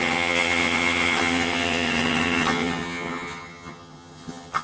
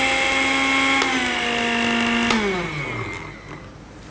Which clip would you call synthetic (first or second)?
first